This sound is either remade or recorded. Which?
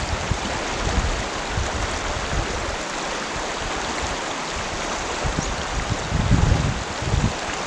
recorded